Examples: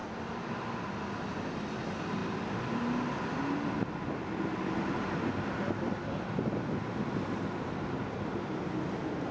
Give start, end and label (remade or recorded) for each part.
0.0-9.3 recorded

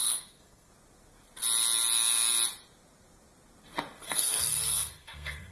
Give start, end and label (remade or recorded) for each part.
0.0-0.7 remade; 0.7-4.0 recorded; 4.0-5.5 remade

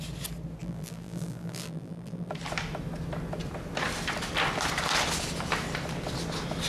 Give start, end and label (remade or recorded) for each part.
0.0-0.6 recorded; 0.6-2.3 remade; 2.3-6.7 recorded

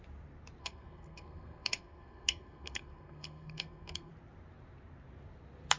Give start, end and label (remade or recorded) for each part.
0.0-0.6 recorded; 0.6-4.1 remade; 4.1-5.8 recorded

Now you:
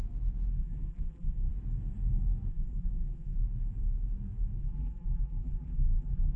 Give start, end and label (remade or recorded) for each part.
0.0-0.5 recorded; 0.5-1.5 remade; 1.5-2.5 recorded; 2.5-3.4 remade; 3.4-4.6 recorded; 4.6-6.4 remade